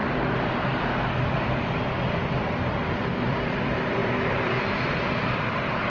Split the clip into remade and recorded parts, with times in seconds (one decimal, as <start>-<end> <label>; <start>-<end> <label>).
0.0-5.9 remade